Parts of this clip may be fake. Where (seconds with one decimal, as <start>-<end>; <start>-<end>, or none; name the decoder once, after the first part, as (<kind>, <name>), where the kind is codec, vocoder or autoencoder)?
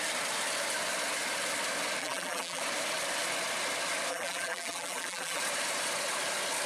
2.0-2.6 (vocoder, BigVGAN v2); 4.1-5.4